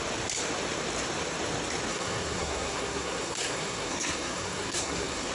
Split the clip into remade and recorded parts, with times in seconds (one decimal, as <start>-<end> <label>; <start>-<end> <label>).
0.0-1.9 recorded; 1.9-5.3 remade